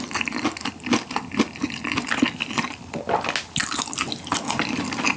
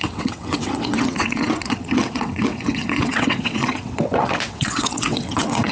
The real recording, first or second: first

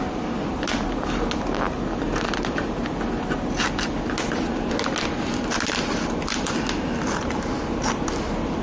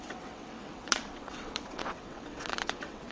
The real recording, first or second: first